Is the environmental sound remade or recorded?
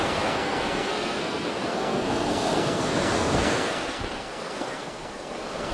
remade